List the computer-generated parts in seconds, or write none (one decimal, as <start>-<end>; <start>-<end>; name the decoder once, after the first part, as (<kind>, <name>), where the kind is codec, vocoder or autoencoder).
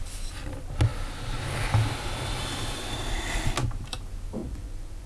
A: 4.4-5.1 (vocoder, Vocos)